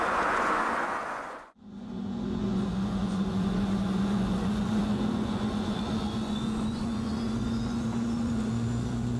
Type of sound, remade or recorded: remade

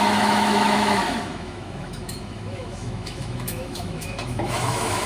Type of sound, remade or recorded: remade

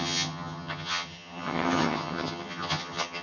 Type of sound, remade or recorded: remade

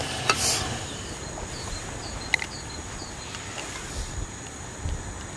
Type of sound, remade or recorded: recorded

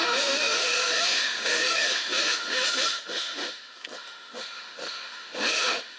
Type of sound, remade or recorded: remade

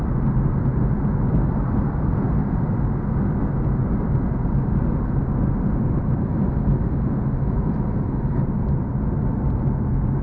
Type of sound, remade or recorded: recorded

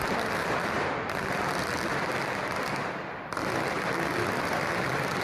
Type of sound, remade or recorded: recorded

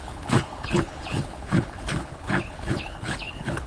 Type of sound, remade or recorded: remade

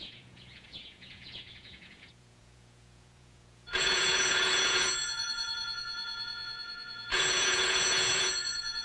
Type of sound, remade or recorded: remade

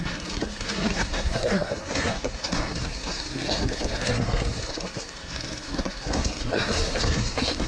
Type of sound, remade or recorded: remade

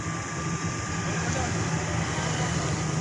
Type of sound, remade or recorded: recorded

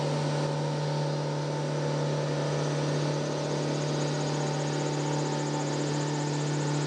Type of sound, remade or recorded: recorded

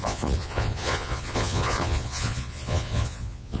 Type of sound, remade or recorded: remade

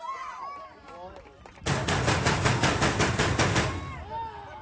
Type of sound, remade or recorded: recorded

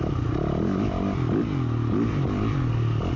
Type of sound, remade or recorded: recorded